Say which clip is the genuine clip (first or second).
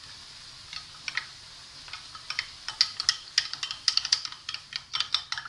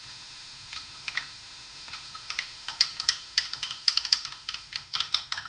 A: first